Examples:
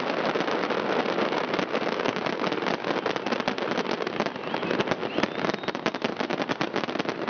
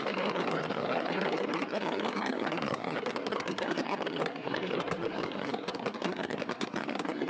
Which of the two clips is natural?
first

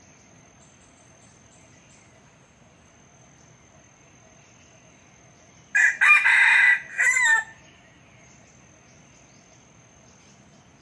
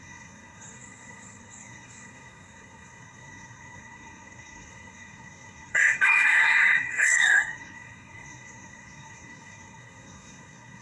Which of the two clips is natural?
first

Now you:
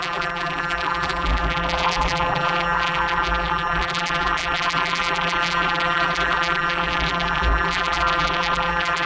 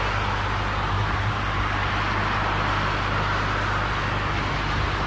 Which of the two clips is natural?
second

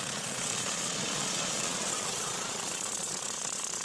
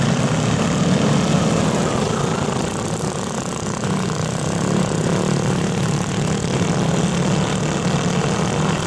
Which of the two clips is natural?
second